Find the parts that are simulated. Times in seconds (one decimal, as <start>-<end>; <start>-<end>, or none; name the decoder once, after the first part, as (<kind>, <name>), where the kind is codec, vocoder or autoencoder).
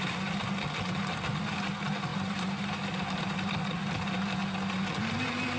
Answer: 2.1-3.2 (vocoder, BigVGAN v2)